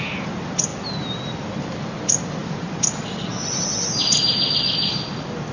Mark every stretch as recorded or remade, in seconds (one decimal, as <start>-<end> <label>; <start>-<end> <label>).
0.0-5.5 recorded

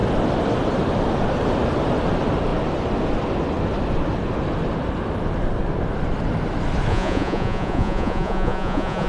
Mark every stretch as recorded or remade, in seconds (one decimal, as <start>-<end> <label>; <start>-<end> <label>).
0.0-6.9 recorded; 6.9-9.1 remade